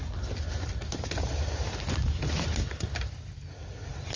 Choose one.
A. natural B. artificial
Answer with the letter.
A